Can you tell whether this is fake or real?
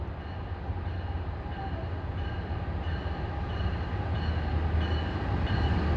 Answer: real